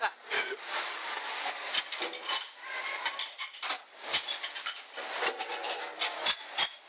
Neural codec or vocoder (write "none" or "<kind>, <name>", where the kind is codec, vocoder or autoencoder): none